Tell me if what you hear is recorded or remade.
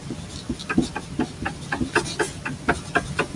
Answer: recorded